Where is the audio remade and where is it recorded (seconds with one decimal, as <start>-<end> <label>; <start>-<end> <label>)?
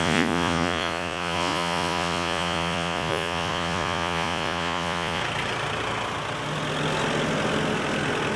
0.0-5.2 remade; 5.2-8.4 recorded